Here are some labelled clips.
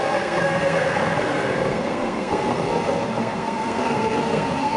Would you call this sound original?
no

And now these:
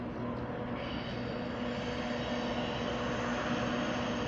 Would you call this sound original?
yes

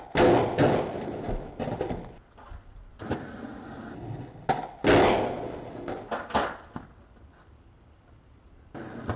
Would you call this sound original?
yes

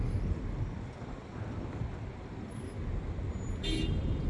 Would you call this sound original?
yes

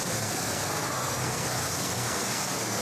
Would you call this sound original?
no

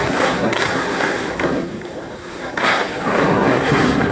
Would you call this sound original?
no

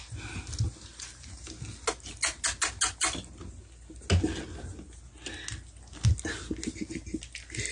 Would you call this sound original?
yes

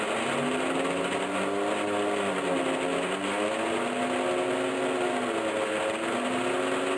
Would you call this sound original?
yes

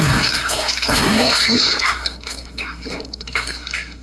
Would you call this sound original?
no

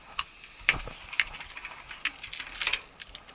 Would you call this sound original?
yes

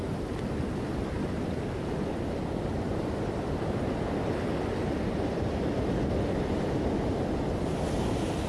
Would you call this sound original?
yes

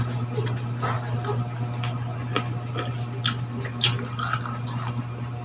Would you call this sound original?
yes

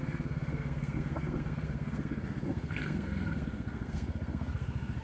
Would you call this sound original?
no